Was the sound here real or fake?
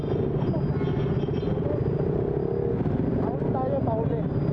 real